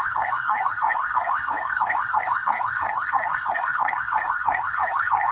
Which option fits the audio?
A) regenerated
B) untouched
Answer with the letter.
A